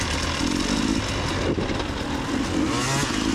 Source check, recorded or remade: recorded